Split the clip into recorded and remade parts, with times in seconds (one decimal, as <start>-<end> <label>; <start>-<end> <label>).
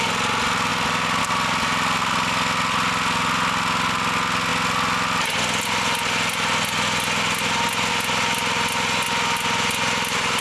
0.0-10.4 recorded